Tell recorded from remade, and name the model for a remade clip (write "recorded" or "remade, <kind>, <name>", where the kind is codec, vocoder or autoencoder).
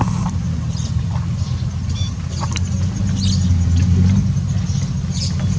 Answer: recorded